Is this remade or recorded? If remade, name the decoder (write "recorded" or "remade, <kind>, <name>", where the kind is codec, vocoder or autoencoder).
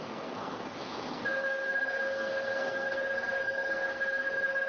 remade, codec, SNAC